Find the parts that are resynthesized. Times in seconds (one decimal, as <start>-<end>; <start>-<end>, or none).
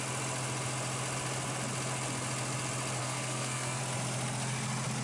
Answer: 3.0-3.8